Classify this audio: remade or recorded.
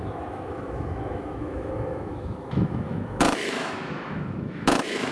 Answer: remade